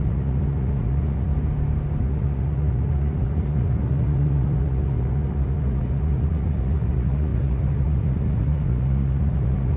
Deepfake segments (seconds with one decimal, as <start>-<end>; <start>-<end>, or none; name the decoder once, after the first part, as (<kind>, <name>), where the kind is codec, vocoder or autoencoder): 0.0-1.3 (vocoder, Vocos); 2.0-9.8

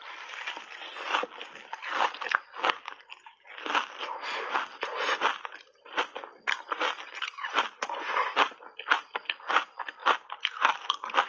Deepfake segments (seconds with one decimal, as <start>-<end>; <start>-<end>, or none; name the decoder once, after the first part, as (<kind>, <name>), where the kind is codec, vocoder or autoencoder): none

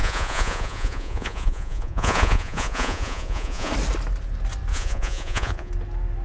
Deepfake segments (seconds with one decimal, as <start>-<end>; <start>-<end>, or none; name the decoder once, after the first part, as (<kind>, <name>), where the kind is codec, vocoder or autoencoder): 0.0-3.7 (vocoder, Vocos); 4.7-5.7

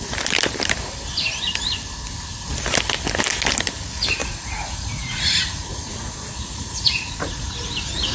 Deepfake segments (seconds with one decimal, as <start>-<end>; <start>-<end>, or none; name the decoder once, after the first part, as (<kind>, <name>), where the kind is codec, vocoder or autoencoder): 4.2-7.5 (vocoder, Vocos)

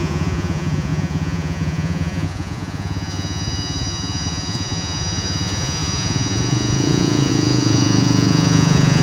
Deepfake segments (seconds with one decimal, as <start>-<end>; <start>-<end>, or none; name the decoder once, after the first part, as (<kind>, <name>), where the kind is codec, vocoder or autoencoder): 0.0-9.0 (vocoder, Vocos)

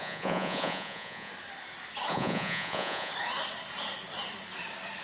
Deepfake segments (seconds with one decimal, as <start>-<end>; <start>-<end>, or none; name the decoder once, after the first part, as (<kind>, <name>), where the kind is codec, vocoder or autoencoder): 0.0-1.3 (vocoder, Vocos); 2.1-3.1